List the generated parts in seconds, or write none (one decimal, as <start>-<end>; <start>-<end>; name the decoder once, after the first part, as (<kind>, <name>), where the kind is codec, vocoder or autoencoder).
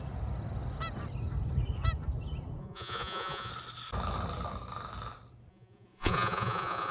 2.6-3.5 (vocoder, Vocos); 5.5-6.9